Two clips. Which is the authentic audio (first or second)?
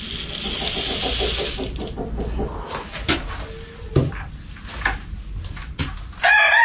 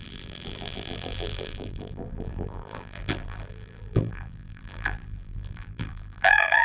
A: first